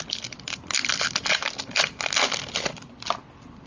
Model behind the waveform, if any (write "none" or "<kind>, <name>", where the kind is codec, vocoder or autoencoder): none